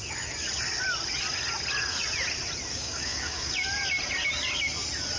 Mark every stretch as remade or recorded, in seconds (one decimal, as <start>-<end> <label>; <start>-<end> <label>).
0.0-2.7 recorded; 2.7-3.5 remade; 3.5-5.2 recorded